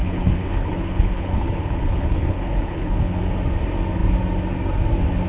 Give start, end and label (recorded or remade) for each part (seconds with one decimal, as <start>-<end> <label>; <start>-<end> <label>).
0.0-3.2 remade; 3.2-5.3 recorded